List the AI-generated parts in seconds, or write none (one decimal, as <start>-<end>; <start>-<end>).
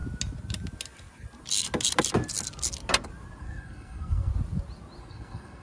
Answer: 3.4-4.3; 5.0-5.6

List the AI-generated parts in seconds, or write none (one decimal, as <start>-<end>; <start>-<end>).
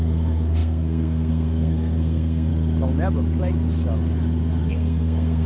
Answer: 0.0-2.5; 4.7-5.5